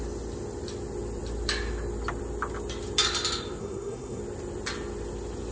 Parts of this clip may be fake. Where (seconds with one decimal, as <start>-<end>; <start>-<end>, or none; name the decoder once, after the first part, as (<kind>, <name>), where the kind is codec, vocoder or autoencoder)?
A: 3.6-4.2 (codec, SNAC)